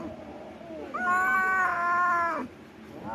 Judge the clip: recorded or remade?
recorded